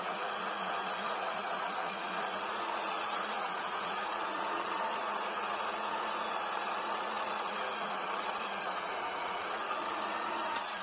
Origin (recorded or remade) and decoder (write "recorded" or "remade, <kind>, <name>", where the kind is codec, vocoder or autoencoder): remade, vocoder, Vocos